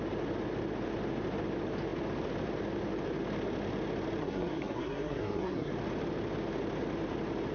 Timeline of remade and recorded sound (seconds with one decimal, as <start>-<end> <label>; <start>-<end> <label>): 0.0-4.2 recorded; 4.2-5.7 remade; 5.7-7.5 recorded